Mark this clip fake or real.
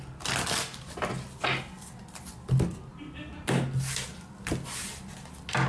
real